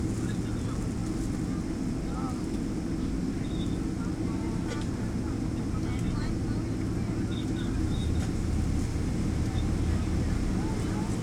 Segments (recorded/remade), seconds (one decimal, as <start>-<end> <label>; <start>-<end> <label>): 0.0-11.2 recorded